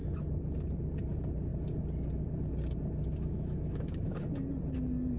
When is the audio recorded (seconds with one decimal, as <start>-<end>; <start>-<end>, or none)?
0.0-3.0; 4.4-5.2